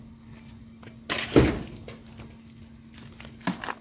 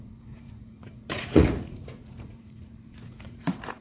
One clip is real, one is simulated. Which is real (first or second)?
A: first